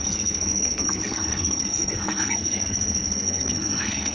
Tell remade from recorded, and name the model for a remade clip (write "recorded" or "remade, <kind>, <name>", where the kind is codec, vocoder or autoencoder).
remade, codec, SNAC